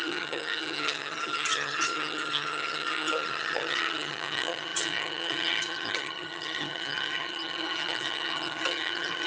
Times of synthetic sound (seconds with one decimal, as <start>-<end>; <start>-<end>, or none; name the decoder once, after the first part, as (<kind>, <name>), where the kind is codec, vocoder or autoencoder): 0.0-9.3 (vocoder, HiFi-GAN)